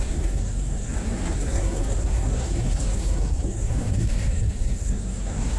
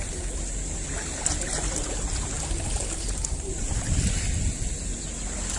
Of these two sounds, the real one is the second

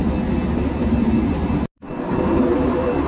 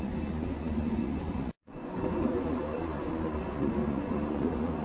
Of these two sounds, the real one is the first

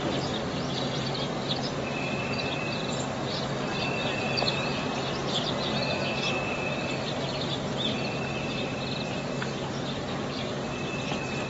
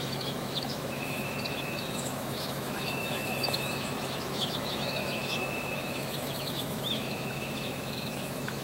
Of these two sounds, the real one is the first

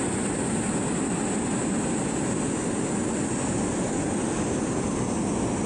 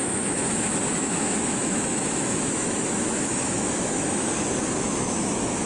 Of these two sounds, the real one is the first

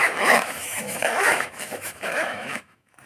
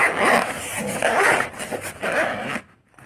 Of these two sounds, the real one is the second